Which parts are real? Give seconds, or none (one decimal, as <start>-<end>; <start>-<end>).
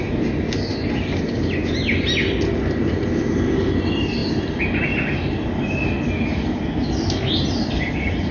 0.0-8.3